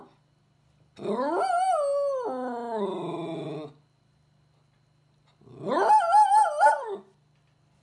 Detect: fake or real real